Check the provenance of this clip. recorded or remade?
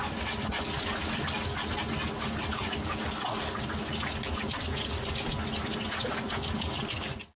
recorded